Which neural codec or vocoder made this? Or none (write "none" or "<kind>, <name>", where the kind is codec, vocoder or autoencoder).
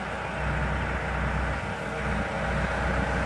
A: none